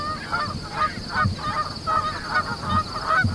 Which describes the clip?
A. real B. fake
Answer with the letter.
A